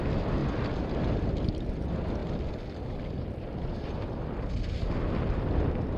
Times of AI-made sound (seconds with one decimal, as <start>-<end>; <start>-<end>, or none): 0.4-0.9; 2.2-3.7

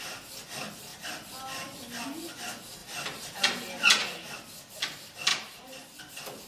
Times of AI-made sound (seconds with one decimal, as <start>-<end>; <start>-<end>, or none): 2.8-3.4; 5.3-6.0

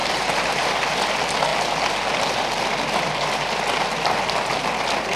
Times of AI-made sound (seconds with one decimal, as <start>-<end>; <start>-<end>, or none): 0.0-0.7

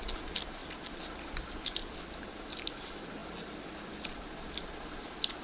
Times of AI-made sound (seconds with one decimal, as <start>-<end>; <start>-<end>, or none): 0.6-1.3

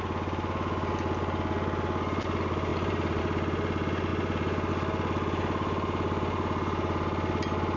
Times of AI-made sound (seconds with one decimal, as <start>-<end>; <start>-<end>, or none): 2.7-3.2

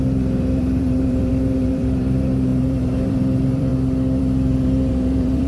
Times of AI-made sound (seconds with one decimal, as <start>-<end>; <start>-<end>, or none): 0.0-3.7; 4.2-5.5

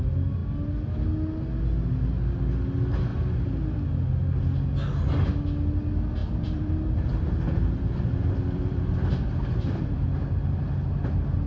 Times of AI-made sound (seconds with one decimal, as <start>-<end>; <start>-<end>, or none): 6.2-9.8

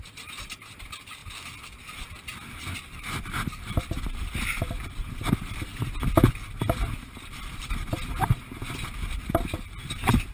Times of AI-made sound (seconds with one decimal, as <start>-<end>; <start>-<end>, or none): 0.0-1.2; 2.9-10.3